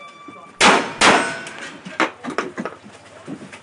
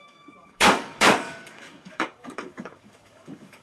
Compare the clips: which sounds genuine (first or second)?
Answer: first